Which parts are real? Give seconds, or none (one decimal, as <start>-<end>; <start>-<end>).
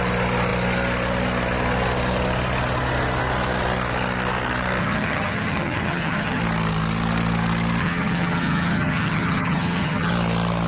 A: 0.0-4.8; 6.4-7.8; 10.1-10.7